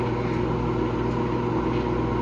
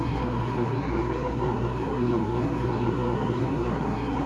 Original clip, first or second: first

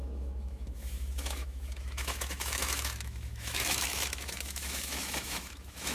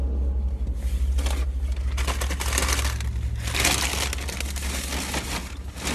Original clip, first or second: second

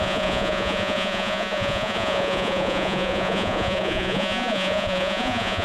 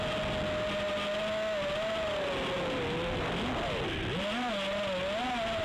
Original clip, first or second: second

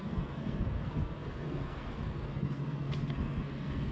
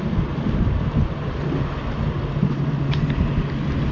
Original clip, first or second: second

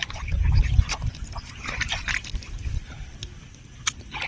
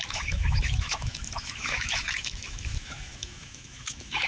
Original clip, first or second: first